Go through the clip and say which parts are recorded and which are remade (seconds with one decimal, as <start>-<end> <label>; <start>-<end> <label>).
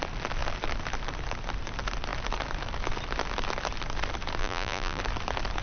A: 0.0-4.4 recorded; 4.4-5.0 remade; 5.0-5.6 recorded